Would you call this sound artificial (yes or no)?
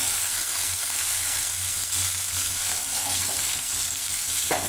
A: yes